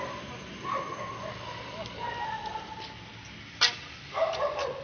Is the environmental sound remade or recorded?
recorded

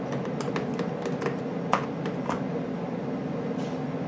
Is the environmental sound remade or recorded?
recorded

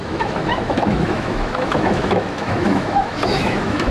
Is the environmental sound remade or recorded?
remade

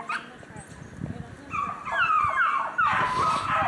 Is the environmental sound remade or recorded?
recorded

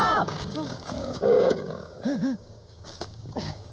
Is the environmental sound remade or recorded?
remade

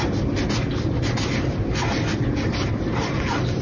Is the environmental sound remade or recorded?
recorded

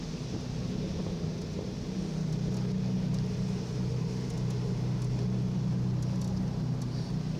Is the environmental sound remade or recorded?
recorded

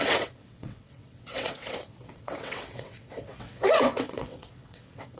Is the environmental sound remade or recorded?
remade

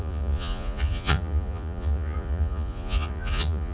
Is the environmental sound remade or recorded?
remade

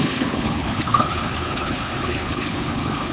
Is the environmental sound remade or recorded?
remade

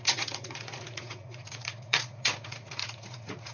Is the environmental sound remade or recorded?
remade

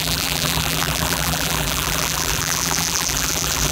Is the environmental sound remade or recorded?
remade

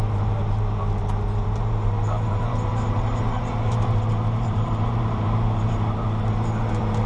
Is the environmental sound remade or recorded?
remade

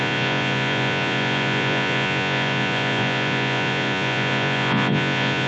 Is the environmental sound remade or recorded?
remade